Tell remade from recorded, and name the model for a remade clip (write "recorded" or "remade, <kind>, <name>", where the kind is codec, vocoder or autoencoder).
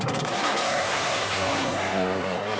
remade, codec, SNAC